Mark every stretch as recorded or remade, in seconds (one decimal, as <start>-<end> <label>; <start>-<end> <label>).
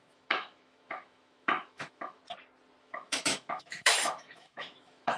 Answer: 0.0-2.2 remade; 2.2-2.8 recorded; 2.8-5.2 remade